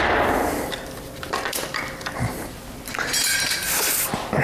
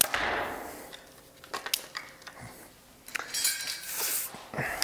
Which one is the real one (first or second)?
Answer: second